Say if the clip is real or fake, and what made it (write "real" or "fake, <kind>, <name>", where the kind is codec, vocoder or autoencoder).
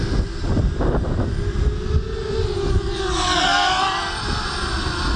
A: real